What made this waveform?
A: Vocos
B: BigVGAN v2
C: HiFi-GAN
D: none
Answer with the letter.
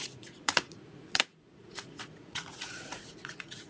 A